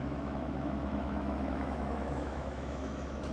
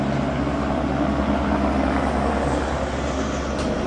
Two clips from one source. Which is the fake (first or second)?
first